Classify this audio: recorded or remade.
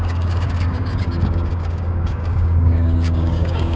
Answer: remade